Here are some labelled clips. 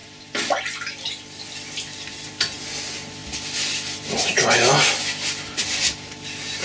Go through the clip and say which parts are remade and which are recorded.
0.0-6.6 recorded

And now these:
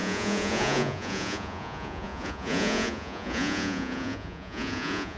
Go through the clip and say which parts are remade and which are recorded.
0.0-5.2 remade

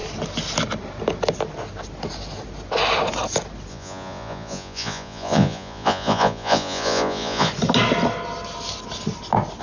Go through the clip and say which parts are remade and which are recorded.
0.0-3.7 recorded; 3.7-7.5 remade; 7.5-9.6 recorded

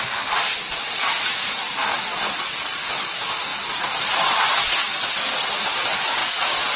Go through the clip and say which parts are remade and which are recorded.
0.0-1.0 recorded; 1.0-1.7 remade; 1.7-6.2 recorded; 6.2-6.8 remade

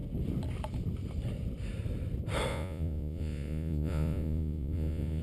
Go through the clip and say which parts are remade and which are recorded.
0.0-2.5 recorded; 2.5-5.2 remade

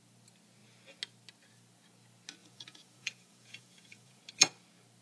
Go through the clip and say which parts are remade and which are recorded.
0.0-2.4 recorded; 2.4-4.2 remade; 4.2-5.0 recorded

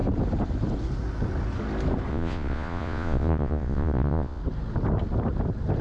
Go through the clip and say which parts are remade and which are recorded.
0.0-2.1 recorded; 2.1-4.4 remade; 4.4-5.8 recorded

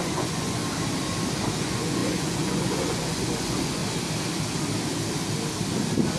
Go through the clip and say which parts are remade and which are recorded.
0.0-0.6 remade; 0.6-1.6 recorded; 1.6-3.8 remade; 3.8-6.2 recorded